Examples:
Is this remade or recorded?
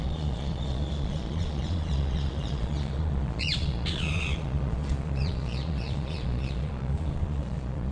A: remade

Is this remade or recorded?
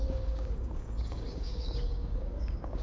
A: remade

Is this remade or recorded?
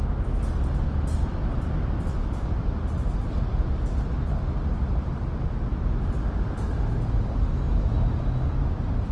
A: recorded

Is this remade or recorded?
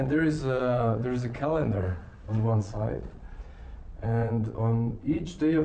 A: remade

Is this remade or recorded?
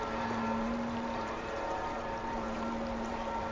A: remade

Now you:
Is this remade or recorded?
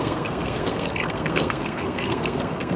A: remade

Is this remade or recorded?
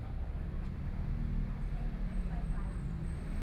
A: recorded